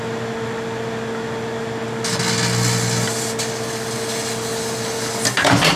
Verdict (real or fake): real